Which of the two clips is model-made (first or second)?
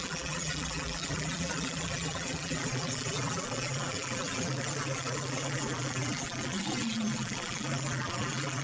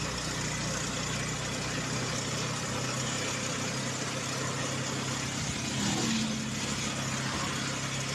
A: first